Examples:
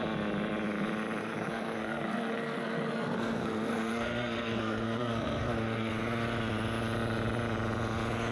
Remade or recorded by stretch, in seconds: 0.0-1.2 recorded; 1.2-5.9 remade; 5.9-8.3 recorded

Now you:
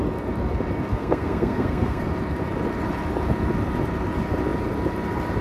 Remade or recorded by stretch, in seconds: 0.0-0.9 recorded; 0.9-2.0 remade; 2.0-5.4 recorded

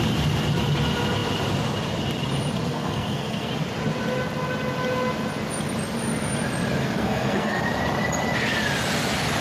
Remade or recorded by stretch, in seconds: 0.0-2.7 recorded; 2.7-3.5 remade; 3.5-6.8 recorded; 6.8-7.6 remade; 7.6-9.4 recorded

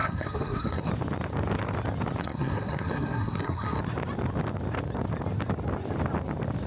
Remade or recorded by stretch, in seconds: 0.0-0.9 remade; 0.9-2.2 recorded; 2.2-3.8 remade; 3.8-6.7 recorded

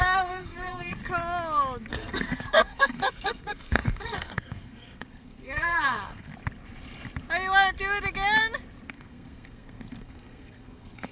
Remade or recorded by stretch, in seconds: 0.0-1.0 remade; 1.0-1.9 recorded; 1.9-6.3 remade; 6.3-8.9 recorded; 8.9-11.1 remade

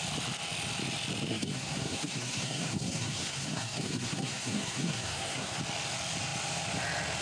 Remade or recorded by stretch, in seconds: 0.0-1.3 recorded; 1.3-5.6 remade; 5.6-7.2 recorded

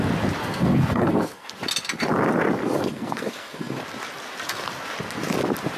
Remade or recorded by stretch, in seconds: 0.0-0.4 recorded; 0.4-1.5 remade; 1.5-2.6 recorded; 2.6-3.8 remade; 3.8-5.8 recorded